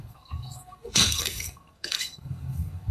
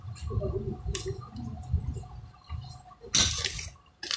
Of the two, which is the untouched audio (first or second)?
second